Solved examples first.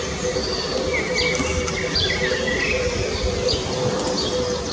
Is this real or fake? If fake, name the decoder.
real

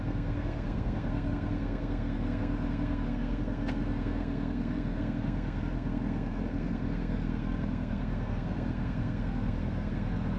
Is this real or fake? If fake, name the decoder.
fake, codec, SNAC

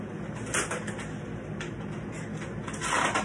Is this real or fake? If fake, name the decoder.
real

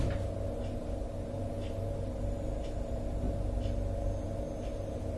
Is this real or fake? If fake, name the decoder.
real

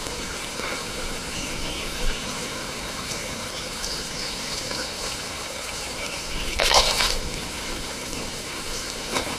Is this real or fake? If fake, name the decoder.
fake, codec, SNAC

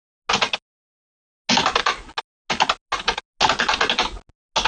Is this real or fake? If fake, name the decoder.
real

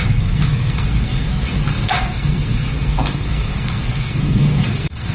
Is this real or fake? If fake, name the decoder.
fake, codec, SNAC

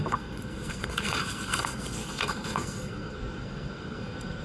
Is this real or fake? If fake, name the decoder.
fake, codec, SNAC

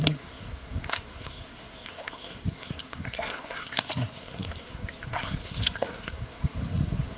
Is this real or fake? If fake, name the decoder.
fake, codec, SNAC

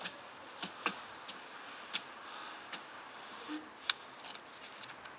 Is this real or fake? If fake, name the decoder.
real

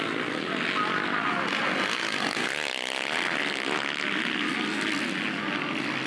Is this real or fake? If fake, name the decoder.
real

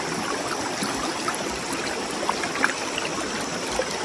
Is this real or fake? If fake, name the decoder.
real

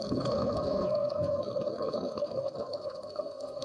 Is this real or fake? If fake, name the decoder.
fake, codec, SNAC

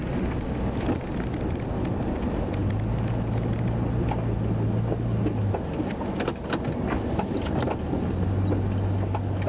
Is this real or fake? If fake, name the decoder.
real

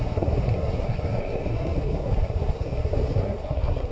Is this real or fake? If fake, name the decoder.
fake, codec, SNAC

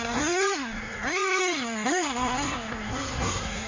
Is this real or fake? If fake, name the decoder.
fake, codec, SNAC